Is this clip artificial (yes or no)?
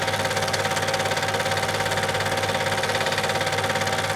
no